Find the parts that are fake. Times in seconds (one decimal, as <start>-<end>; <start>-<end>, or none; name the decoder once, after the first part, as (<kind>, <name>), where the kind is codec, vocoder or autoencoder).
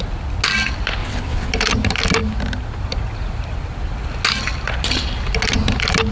1.0-1.5 (vocoder, WaveNeXt)